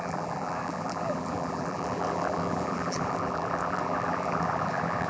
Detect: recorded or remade remade